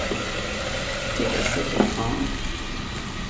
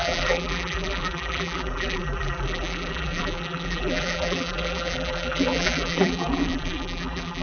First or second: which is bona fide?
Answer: first